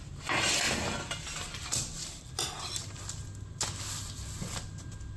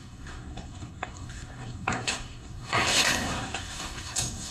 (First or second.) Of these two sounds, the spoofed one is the second